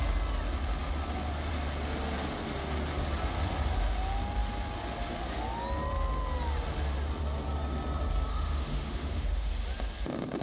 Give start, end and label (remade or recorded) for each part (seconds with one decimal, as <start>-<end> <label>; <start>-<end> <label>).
0.0-8.3 recorded; 8.3-9.5 remade; 9.5-10.4 recorded